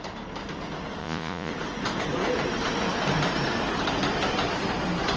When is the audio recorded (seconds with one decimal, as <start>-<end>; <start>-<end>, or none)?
0.0-1.0; 1.5-5.2